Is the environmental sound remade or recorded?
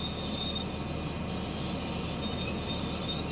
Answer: recorded